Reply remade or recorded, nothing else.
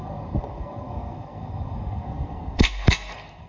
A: remade